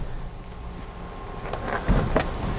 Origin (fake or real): real